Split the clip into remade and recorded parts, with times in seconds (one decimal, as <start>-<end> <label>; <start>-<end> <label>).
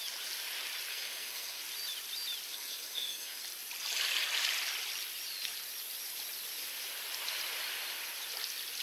0.0-0.9 recorded; 0.9-1.6 remade; 1.6-2.5 recorded; 2.5-3.4 remade; 3.4-8.8 recorded